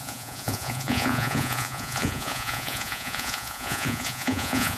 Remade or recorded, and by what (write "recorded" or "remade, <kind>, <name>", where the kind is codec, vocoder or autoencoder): remade, vocoder, Vocos